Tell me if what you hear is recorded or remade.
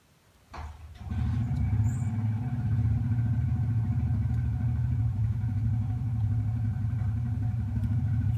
remade